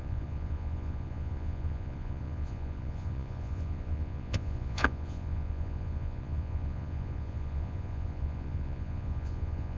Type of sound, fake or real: fake